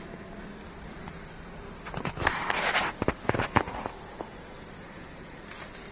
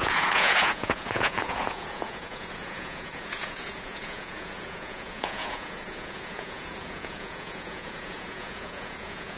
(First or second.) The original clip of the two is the first